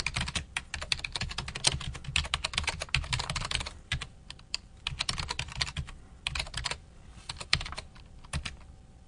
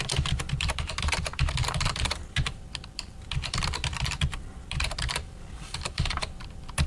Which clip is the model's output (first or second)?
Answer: second